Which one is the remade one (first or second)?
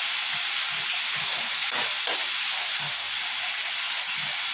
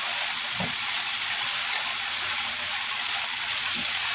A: second